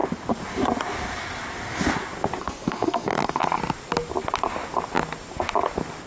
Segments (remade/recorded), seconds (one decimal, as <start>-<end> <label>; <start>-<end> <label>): 0.0-2.4 recorded; 2.4-3.6 remade; 3.6-6.1 recorded